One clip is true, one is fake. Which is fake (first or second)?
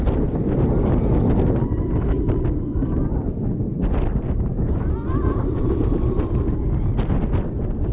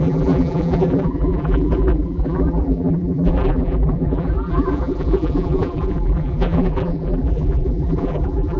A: second